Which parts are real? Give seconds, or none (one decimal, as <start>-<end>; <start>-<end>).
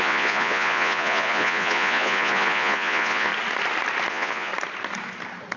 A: 3.3-4.1; 4.5-5.6